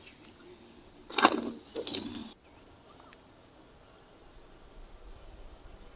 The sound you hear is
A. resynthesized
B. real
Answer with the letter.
B